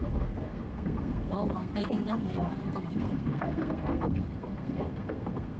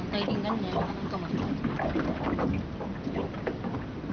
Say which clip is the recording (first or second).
second